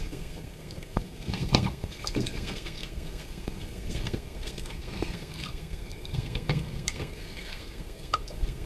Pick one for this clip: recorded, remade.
remade